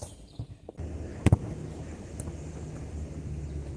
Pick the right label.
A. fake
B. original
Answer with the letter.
B